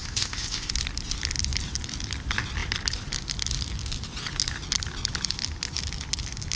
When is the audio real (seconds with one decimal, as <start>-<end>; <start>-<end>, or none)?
0.7-6.6